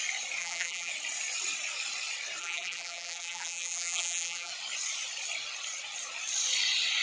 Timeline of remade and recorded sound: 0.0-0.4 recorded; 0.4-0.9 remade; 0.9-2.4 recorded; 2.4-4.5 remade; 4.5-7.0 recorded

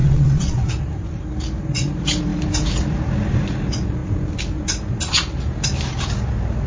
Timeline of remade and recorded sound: 0.0-0.7 remade; 0.7-6.7 recorded

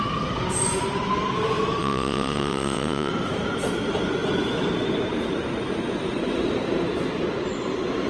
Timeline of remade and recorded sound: 0.0-1.8 recorded; 1.8-3.1 remade; 3.1-8.1 recorded

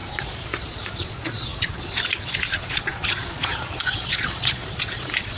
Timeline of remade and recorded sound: 0.0-5.4 remade

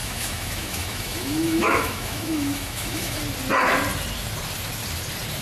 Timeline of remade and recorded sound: 0.0-3.2 remade; 3.2-5.4 recorded

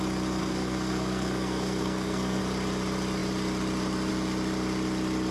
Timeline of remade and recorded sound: 0.0-0.4 recorded; 0.4-2.4 remade; 2.4-5.3 recorded